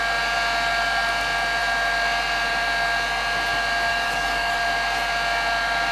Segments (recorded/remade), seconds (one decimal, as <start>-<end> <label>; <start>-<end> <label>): 0.0-3.9 recorded; 3.9-4.6 remade; 4.6-5.9 recorded

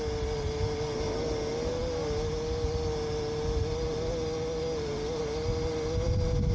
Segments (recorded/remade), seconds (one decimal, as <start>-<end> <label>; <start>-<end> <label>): 0.0-6.5 recorded